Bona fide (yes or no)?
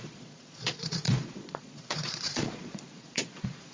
no